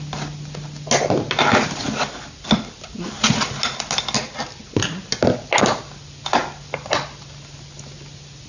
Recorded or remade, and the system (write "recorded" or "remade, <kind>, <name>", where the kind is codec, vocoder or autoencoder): recorded